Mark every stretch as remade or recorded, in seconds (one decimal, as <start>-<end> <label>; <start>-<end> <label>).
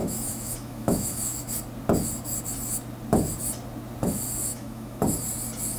0.0-1.5 remade; 1.5-4.5 recorded; 4.5-5.0 remade; 5.0-5.8 recorded